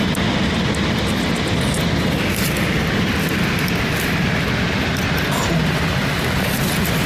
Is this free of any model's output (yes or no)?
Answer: yes